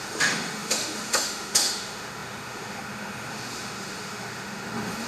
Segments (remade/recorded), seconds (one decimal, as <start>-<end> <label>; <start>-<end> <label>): 0.0-5.1 remade